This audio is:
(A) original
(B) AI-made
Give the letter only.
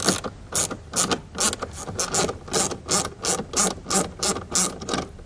A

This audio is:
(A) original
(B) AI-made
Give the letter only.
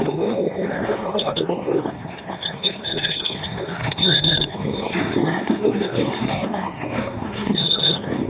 B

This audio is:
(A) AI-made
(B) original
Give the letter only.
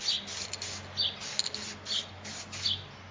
B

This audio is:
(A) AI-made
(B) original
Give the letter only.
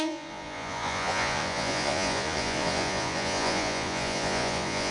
A